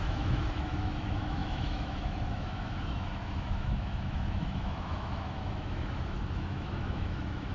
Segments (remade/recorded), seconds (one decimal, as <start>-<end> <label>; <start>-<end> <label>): 0.0-7.5 remade